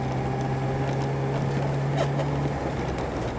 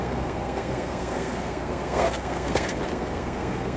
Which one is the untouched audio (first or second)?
first